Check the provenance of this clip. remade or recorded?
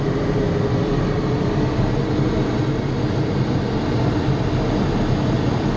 recorded